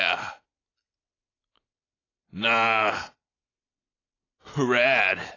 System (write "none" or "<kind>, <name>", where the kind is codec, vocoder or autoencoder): none